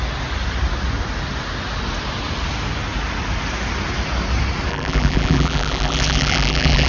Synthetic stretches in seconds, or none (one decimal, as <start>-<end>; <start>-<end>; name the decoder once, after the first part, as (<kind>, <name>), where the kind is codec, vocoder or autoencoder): 4.7-6.9 (vocoder, BigVGAN v2)